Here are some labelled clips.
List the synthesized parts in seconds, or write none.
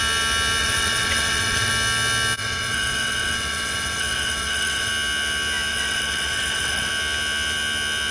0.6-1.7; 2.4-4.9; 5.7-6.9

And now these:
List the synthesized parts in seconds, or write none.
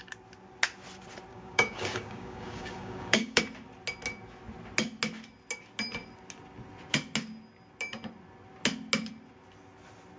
1.3-3.4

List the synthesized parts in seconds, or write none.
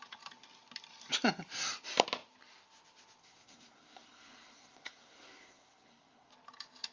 3.2-6.3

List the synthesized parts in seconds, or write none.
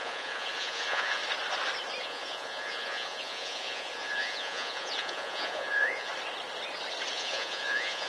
0.0-1.2; 2.0-6.1; 7.1-8.1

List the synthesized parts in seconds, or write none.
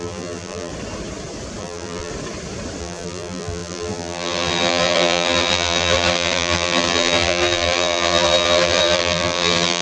0.0-0.7; 1.6-2.1; 2.8-9.8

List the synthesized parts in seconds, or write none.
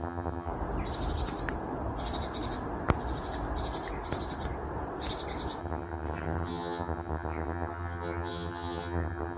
0.0-0.5; 5.6-9.4